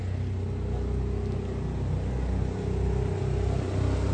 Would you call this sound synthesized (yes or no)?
no